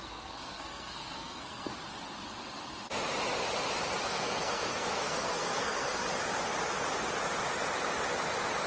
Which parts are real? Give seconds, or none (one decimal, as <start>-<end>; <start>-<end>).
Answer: 1.7-4.1; 6.0-8.7